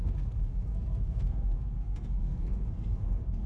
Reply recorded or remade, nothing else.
remade